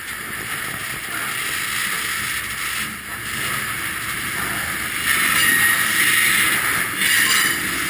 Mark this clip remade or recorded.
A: recorded